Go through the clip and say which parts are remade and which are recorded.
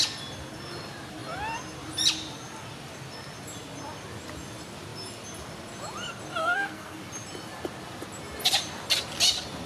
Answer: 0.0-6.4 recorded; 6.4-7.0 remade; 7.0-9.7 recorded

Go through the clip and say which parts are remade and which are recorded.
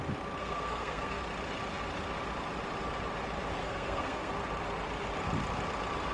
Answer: 0.0-0.4 recorded; 0.4-1.2 remade; 1.2-3.6 recorded; 3.6-4.3 remade; 4.3-6.1 recorded